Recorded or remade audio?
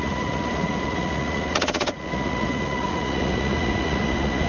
remade